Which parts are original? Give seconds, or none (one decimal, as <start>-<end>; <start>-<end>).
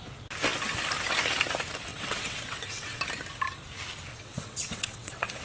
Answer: 0.0-1.9; 3.0-4.1